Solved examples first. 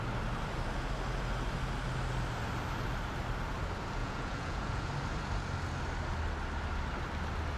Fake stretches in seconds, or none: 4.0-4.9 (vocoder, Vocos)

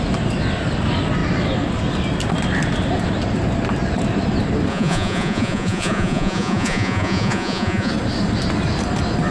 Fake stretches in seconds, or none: 4.7-7.9 (vocoder, Vocos)

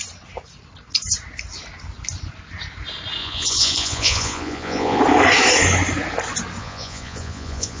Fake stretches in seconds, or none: 3.2-5.0 (vocoder, Vocos); 6.6-7.8

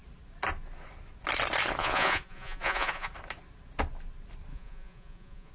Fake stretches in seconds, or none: 1.8-3.1 (vocoder, Vocos); 4.5-5.5

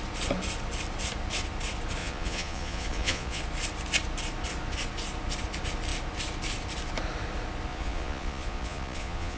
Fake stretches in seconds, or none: 2.0-3.4 (vocoder, Vocos); 7.7-9.4